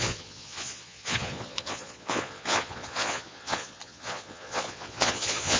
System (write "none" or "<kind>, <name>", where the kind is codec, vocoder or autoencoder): vocoder, Vocos